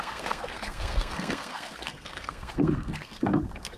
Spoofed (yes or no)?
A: yes